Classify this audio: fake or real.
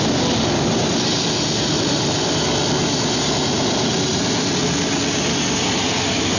real